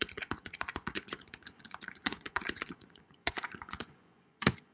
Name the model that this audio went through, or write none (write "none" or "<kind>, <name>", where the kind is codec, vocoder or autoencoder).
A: vocoder, Vocos